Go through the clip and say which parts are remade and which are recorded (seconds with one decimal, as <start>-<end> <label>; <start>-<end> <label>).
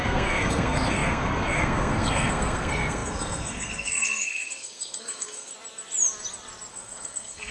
0.0-5.5 remade; 5.5-6.7 recorded; 6.7-7.5 remade